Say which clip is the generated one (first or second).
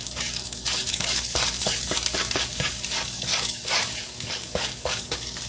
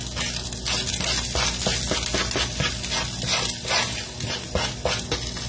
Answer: first